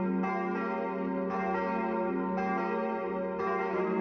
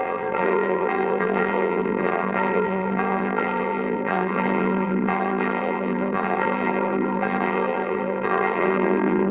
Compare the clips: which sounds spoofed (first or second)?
second